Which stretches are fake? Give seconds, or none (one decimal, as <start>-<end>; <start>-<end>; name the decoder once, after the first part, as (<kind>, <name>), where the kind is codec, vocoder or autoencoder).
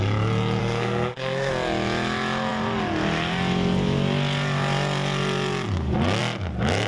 0.6-1.5 (codec, SNAC)